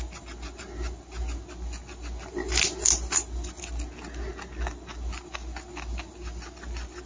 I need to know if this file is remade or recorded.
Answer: recorded